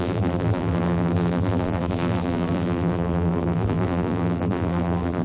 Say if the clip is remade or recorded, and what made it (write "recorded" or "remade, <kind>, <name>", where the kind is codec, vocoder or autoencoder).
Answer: remade, vocoder, BigVGAN v2